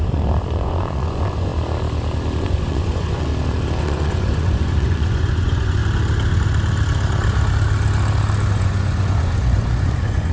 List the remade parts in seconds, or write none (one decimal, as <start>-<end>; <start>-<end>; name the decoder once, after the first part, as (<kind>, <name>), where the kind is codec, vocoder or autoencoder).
0.0-1.5 (vocoder, Vocos); 2.4-3.3; 3.8-5.8; 8.5-10.3